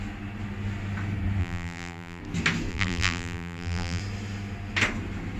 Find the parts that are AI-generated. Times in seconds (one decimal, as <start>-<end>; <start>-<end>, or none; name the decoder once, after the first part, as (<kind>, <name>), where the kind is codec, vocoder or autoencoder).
1.4-2.2 (vocoder, BigVGAN v2); 2.7-4.0